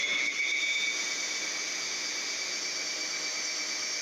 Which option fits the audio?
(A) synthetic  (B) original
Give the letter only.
B